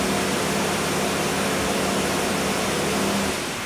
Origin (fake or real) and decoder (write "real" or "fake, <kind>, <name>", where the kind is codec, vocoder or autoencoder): real